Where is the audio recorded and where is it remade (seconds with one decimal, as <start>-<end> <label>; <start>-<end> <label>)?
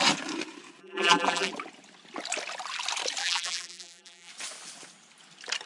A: 0.0-0.8 recorded; 0.8-1.5 remade; 1.5-3.2 recorded; 3.2-4.3 remade; 4.3-5.7 recorded